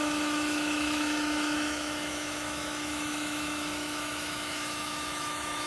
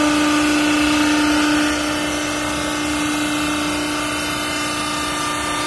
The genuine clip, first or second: second